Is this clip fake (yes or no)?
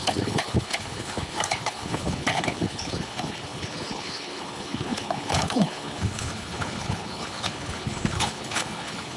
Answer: yes